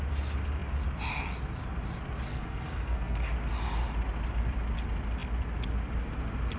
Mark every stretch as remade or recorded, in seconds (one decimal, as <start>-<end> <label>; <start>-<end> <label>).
0.0-2.3 recorded; 2.3-3.3 remade; 3.3-6.6 recorded